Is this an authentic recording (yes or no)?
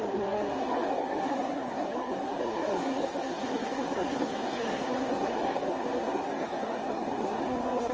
no